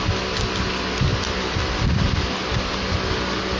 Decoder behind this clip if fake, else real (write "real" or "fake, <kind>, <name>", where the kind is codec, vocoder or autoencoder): real